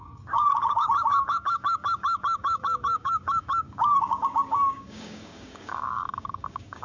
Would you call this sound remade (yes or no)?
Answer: yes